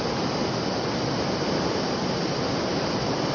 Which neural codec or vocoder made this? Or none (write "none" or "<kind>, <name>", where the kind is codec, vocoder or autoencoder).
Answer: vocoder, BigVGAN v2